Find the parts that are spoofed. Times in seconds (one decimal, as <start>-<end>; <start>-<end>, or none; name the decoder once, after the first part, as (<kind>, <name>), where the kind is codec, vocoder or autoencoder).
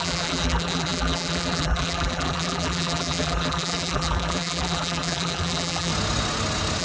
0.0-5.9 (vocoder, BigVGAN v2)